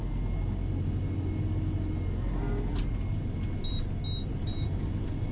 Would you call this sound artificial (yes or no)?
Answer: no